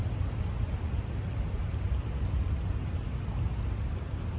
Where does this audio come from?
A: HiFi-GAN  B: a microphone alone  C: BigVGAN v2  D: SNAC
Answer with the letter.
B